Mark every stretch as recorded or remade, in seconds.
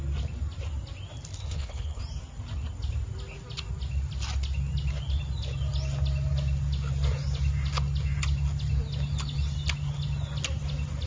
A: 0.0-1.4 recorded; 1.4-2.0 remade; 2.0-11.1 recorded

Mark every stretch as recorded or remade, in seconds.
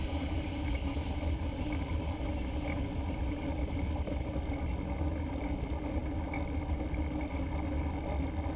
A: 0.0-8.6 recorded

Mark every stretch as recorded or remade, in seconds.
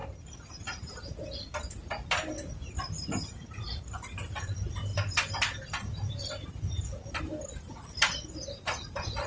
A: 0.0-9.3 recorded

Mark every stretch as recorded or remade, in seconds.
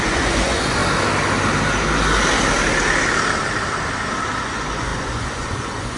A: 0.0-0.8 remade; 0.8-4.4 recorded; 4.4-6.0 remade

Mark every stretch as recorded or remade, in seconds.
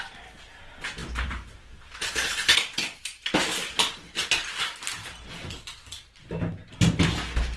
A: 0.0-7.6 recorded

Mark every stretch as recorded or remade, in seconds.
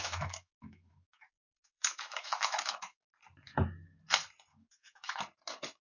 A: 0.0-3.0 remade; 3.0-4.5 recorded; 4.5-5.2 remade; 5.2-5.8 recorded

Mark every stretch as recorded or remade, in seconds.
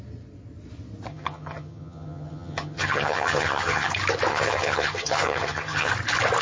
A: 0.0-1.1 recorded; 1.1-3.9 remade; 3.9-4.3 recorded; 4.3-5.9 remade; 5.9-6.4 recorded